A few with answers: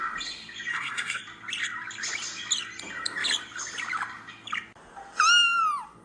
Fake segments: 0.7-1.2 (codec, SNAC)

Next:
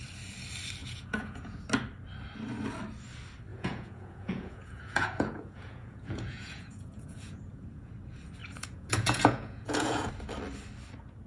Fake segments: 0.8-1.6 (vocoder, Vocos); 3.5-7.9; 8.4-10.1

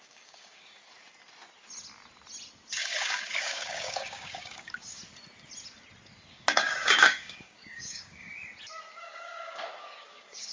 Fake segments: 0.0-0.8 (codec, DAC); 2.7-5.0; 6.3-8.3; 9.0-10.5

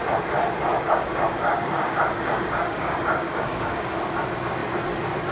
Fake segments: 0.7-3.9 (codec, DAC)

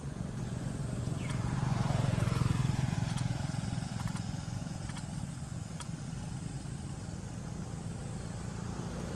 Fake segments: 0.0-4.8 (vocoder, Vocos); 5.2-5.9